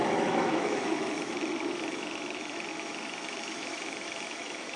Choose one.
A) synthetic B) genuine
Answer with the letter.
A